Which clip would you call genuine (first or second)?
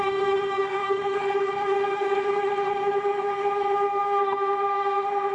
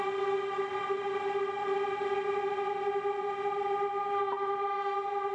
second